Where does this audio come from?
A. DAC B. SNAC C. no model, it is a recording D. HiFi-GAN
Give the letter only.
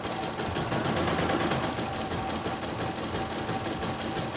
C